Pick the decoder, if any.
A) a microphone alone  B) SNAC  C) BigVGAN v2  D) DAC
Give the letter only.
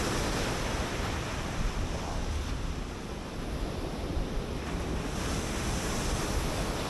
A